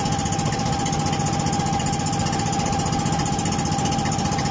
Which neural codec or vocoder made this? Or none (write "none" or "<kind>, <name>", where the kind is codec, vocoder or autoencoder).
none